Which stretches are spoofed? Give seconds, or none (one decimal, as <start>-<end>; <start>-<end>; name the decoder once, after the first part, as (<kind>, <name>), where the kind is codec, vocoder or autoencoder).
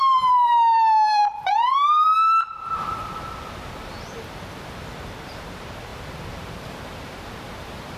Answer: 0.0-8.0 (vocoder, BigVGAN v2)